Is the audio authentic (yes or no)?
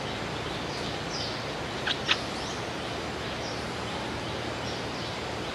yes